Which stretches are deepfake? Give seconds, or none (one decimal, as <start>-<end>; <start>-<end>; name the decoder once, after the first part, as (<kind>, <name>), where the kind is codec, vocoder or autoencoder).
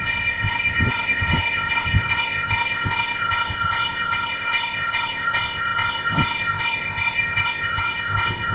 0.0-8.5 (codec, ZipCodec)